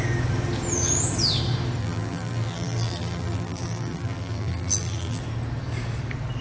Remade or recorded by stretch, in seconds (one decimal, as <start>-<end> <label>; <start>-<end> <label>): 0.0-1.8 recorded; 1.8-5.2 remade; 5.2-6.4 recorded